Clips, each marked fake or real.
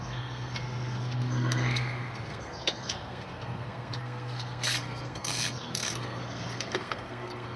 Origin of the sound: fake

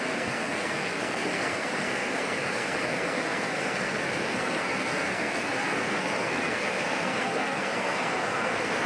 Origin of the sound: fake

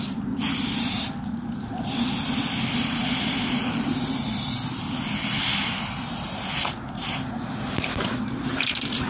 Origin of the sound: fake